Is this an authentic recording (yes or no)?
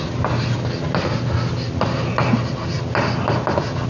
yes